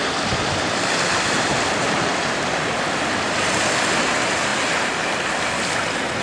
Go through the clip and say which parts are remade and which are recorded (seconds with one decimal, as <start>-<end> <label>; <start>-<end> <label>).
0.0-6.2 recorded